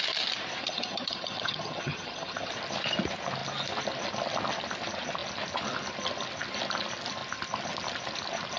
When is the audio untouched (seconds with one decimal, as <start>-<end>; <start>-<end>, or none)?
0.0-0.6; 2.5-8.6